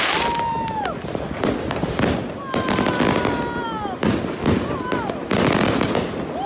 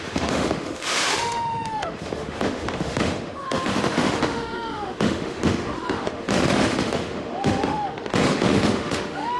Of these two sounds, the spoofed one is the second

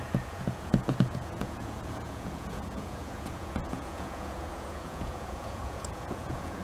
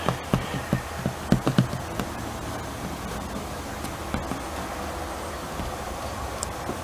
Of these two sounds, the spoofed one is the first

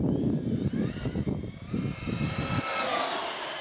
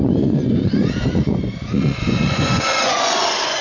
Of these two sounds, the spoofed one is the second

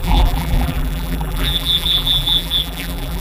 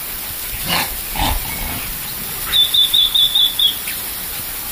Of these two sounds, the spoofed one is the first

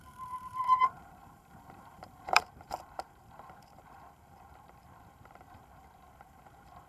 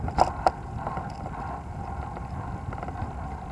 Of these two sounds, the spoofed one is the first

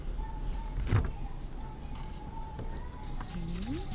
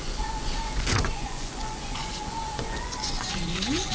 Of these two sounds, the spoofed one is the second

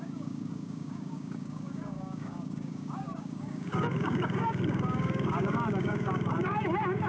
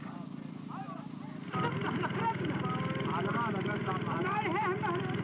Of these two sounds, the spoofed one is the first